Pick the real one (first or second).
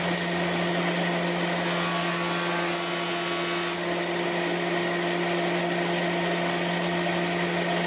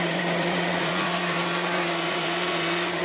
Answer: first